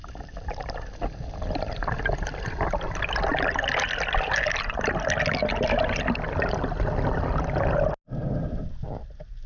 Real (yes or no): yes